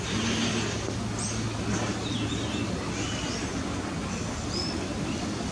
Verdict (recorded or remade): recorded